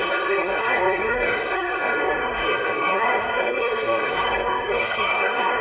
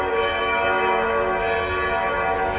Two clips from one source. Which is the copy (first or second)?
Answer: first